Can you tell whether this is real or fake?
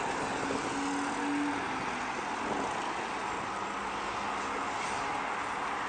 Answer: real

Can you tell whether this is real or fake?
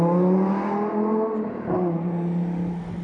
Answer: real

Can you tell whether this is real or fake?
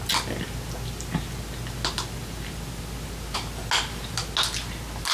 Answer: real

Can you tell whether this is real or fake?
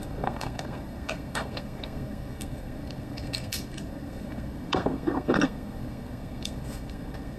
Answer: fake